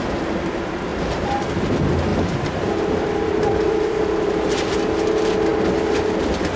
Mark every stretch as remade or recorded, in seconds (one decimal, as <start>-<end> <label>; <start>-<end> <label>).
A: 0.0-0.9 recorded; 0.9-1.5 remade; 1.5-2.1 recorded; 2.1-4.7 remade; 4.7-6.6 recorded